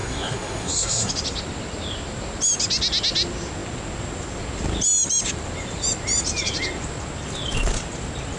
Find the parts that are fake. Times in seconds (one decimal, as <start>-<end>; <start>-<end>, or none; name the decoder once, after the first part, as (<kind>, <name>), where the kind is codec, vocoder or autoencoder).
0.0-1.1 (codec, SNAC)